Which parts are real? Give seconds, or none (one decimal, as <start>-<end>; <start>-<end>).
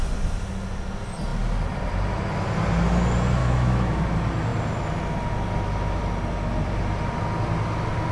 0.0-3.4; 4.0-8.1